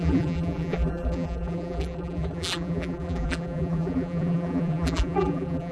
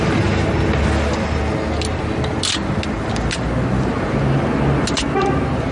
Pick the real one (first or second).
second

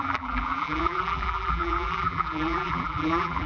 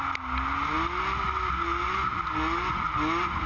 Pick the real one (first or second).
second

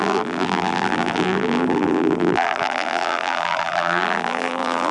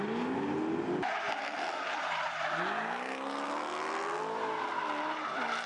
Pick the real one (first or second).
second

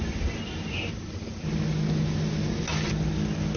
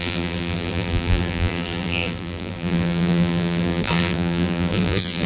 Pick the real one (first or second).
first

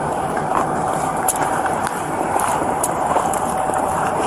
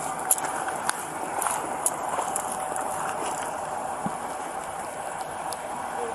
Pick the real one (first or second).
second